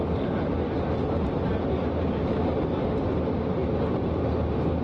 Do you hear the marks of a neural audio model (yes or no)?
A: no